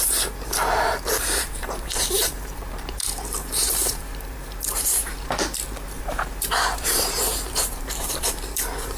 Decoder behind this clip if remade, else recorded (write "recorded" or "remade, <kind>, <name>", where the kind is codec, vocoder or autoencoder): remade, vocoder, BigVGAN v2